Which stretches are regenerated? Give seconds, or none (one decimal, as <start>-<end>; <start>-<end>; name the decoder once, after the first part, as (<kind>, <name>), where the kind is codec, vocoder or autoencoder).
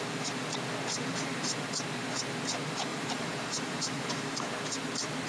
2.9-4.4 (vocoder, BigVGAN v2)